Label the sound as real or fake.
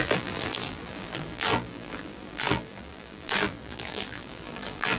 fake